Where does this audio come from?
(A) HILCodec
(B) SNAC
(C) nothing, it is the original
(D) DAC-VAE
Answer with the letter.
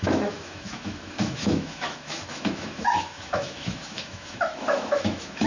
D